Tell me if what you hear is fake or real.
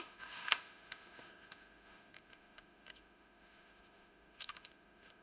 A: fake